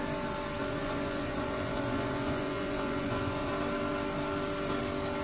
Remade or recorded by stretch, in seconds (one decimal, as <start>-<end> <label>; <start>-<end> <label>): 0.0-0.6 recorded; 0.6-3.5 remade; 3.5-5.2 recorded

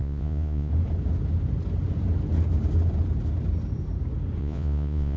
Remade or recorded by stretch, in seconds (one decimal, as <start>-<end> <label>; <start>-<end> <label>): 0.0-0.7 remade; 0.7-4.4 recorded; 4.4-5.2 remade